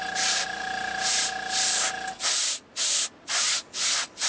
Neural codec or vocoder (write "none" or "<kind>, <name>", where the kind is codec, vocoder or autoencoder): none